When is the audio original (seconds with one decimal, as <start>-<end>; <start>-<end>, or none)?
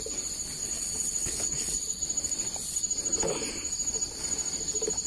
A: 0.0-0.6; 2.0-5.1